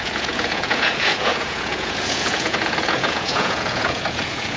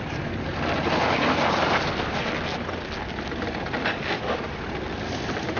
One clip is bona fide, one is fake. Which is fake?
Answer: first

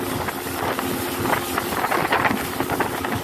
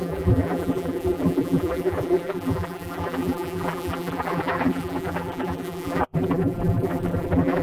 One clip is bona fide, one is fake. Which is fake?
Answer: second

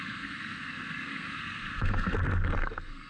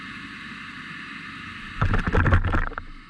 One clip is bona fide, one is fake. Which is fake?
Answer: first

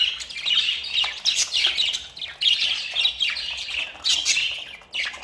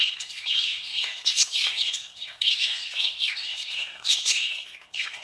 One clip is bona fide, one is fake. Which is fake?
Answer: second